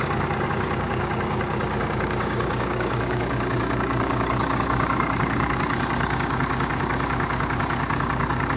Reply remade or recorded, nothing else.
remade